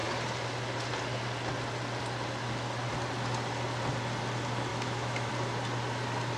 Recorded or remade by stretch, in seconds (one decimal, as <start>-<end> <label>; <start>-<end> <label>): 0.0-4.7 recorded; 4.7-5.3 remade; 5.3-6.4 recorded